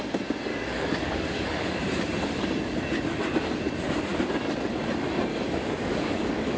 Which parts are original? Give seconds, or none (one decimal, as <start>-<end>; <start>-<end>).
0.0-0.5; 1.8-5.3